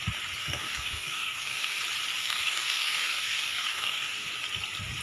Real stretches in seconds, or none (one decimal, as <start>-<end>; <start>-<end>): 0.0-0.4; 1.8-2.2; 4.3-5.0